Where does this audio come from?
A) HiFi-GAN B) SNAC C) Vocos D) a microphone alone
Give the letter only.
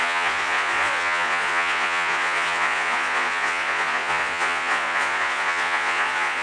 C